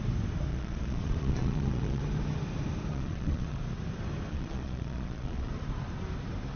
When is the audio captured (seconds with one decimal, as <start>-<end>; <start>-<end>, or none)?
0.0-0.5; 2.0-2.9; 3.6-4.3; 5.5-6.6